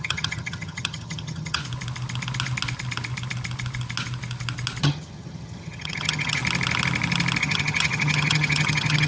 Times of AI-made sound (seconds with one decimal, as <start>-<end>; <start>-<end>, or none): 0.0-1.6; 4.8-6.4; 7.4-9.1

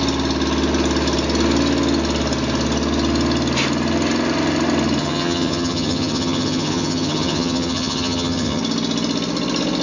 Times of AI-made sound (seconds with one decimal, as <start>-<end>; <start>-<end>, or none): 5.0-8.6